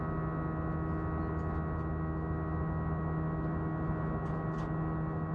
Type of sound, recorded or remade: recorded